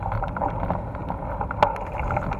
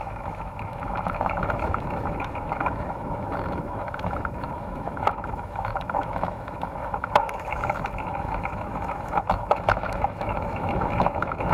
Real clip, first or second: first